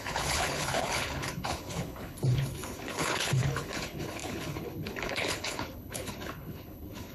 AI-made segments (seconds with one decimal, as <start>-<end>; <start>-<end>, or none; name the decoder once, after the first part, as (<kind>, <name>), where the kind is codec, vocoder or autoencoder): 0.0-7.1 (codec, HILCodec)